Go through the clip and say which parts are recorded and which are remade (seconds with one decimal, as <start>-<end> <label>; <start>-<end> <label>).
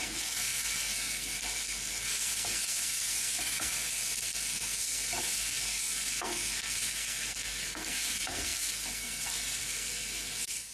0.0-10.7 remade